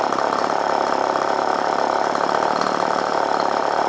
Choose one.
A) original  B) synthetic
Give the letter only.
B